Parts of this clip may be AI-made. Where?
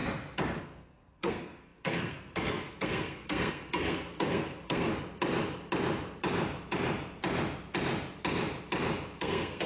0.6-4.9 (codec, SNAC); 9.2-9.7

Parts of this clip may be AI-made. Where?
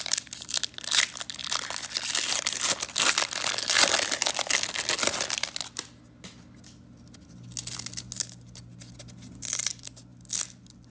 none